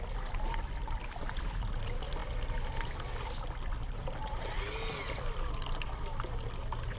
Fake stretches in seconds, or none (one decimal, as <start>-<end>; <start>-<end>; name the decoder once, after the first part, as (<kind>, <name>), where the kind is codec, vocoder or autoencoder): none